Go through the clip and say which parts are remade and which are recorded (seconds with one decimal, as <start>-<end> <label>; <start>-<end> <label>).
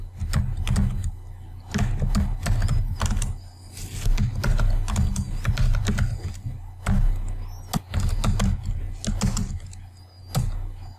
0.0-11.0 recorded